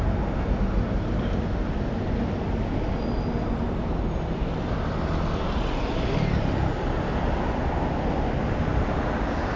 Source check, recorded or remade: recorded